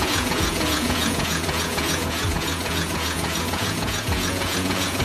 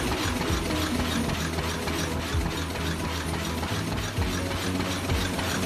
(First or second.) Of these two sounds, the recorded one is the second